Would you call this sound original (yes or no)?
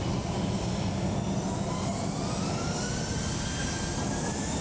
yes